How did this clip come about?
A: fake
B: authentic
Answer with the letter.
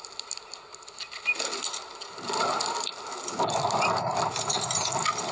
B